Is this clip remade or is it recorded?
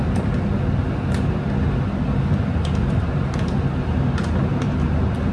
recorded